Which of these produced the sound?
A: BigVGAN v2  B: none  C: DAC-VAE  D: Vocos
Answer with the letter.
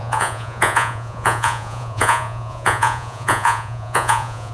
D